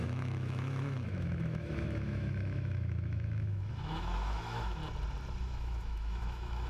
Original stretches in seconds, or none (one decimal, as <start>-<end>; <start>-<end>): 4.8-5.4